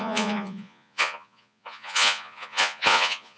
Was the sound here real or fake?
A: fake